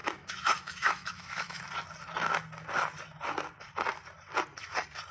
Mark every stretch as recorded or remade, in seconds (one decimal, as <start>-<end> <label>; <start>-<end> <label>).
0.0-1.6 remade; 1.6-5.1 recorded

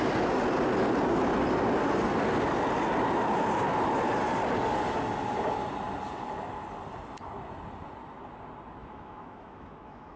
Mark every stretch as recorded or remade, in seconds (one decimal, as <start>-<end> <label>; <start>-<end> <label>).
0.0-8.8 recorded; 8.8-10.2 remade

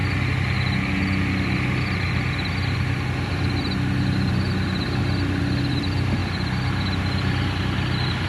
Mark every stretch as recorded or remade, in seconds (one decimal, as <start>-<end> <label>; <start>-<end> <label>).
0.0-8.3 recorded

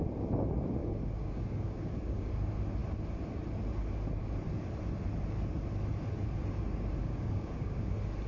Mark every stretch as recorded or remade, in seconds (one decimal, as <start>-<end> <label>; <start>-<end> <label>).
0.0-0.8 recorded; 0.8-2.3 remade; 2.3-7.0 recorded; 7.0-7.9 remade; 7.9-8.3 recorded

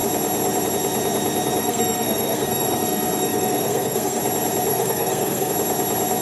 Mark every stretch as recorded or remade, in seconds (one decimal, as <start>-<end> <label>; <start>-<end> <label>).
0.0-1.6 recorded; 1.6-4.2 remade; 4.2-4.7 recorded; 4.7-5.5 remade; 5.5-6.2 recorded

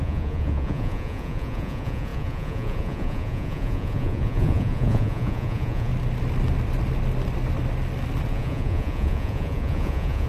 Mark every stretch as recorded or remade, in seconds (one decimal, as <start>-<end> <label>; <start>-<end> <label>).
0.0-5.9 remade; 5.9-8.3 recorded; 8.3-10.3 remade

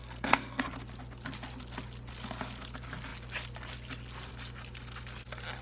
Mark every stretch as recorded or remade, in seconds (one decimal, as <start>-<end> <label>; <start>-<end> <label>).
0.0-0.6 remade; 0.6-5.6 recorded